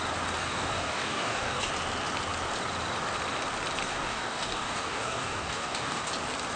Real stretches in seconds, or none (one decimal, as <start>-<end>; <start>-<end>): 0.0-0.4; 1.7-3.9; 6.1-6.6